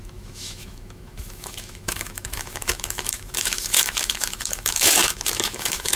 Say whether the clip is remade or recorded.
remade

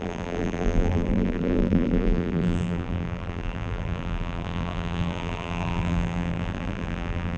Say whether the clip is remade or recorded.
remade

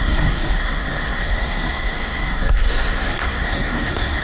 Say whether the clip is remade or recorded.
remade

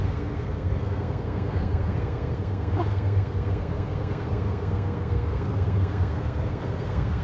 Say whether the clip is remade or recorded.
remade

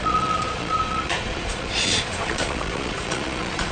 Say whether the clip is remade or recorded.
remade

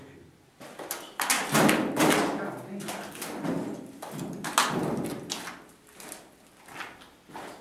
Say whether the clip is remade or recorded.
recorded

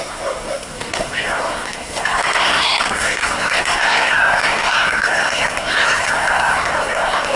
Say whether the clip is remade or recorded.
remade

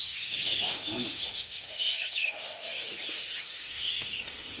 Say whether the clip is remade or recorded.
remade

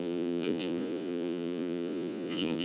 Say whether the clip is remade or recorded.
remade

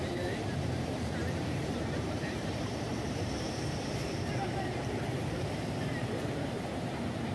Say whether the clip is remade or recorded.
remade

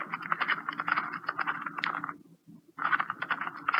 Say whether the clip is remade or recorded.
recorded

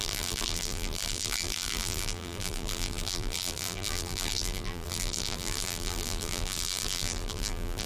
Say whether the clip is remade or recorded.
remade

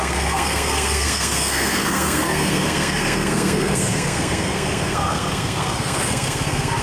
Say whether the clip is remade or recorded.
remade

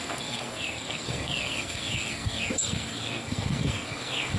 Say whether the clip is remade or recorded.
remade